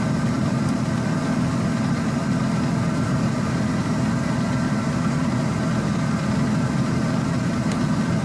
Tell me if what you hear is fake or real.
fake